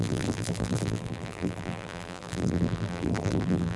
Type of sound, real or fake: fake